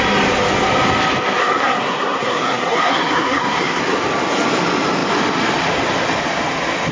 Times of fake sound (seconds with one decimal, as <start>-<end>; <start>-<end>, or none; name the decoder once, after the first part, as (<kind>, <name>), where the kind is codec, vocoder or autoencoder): 1.4-3.8 (codec, SNAC)